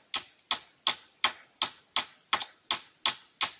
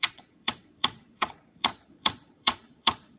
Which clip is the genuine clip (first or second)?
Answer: first